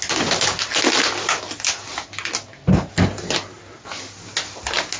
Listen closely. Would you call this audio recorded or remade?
recorded